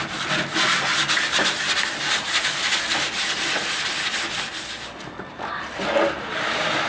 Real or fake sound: real